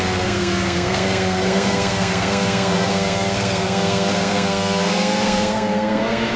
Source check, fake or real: fake